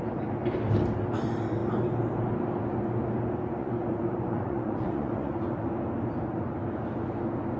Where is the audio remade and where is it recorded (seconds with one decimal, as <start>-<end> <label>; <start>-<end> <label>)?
0.0-3.6 recorded; 3.6-5.7 remade; 5.7-7.6 recorded